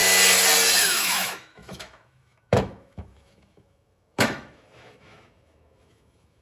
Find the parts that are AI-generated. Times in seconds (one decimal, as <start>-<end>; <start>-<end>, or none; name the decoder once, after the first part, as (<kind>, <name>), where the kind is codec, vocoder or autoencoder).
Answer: 0.8-6.4 (autoencoder, DAC-VAE)